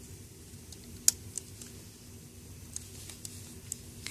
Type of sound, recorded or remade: recorded